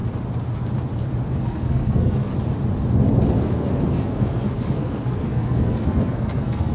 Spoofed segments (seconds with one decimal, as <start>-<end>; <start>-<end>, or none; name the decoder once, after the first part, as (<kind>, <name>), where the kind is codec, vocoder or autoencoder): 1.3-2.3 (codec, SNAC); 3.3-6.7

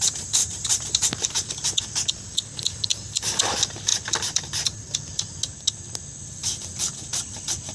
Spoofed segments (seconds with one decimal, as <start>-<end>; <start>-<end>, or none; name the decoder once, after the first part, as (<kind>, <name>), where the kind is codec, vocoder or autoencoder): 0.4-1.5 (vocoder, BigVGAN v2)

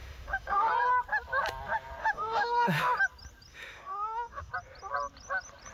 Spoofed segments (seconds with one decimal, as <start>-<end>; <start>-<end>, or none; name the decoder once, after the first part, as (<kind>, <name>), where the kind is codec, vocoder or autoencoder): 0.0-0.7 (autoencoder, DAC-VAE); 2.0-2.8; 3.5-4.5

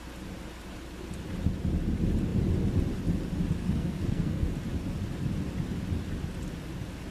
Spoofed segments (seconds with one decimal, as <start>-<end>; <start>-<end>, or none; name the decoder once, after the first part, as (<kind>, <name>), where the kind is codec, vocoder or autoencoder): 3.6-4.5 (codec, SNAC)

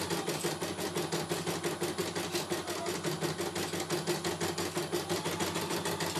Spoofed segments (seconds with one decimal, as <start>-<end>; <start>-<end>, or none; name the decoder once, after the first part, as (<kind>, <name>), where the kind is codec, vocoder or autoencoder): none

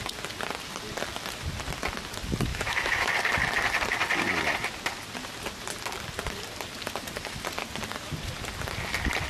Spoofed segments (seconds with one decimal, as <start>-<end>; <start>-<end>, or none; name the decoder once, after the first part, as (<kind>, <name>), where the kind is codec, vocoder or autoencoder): 2.5-3.1 (autoencoder, DAC-VAE)

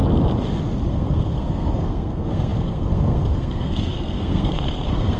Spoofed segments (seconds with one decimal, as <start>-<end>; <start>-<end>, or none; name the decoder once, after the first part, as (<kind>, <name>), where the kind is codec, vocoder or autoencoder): 0.9-5.2 (codec, SNAC)

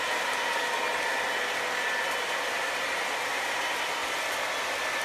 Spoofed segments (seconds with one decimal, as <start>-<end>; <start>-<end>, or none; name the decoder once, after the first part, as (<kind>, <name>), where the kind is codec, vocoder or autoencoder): none